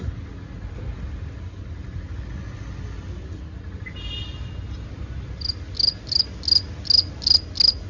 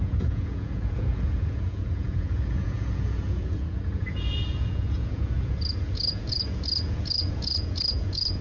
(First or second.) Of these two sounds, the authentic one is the first